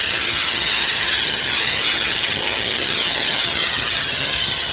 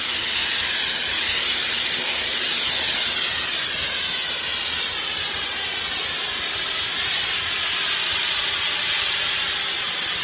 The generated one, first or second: first